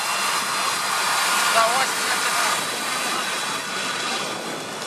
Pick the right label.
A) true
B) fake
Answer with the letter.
A